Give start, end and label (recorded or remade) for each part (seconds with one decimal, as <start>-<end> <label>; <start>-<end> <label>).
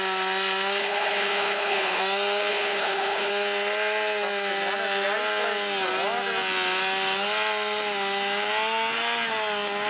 0.0-0.8 recorded; 0.8-2.0 remade; 2.0-2.5 recorded; 2.5-3.3 remade; 3.3-9.9 recorded